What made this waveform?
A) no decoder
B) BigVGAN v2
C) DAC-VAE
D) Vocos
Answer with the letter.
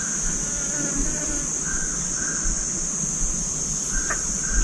A